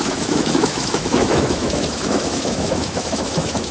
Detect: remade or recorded remade